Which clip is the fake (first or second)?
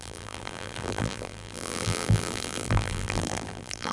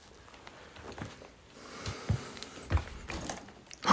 first